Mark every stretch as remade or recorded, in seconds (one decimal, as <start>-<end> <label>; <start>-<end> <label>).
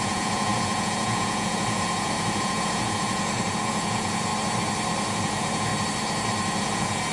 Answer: 0.0-4.3 remade; 4.3-5.1 recorded; 5.1-5.7 remade; 5.7-6.6 recorded; 6.6-7.1 remade